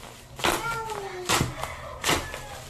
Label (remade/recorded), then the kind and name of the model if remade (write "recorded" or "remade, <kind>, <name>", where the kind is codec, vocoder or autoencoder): recorded